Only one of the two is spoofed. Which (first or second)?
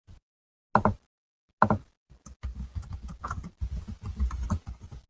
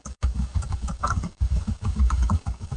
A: second